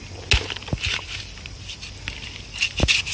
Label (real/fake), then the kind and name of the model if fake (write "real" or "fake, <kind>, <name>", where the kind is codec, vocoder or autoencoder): real